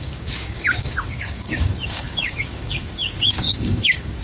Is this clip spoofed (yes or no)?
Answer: yes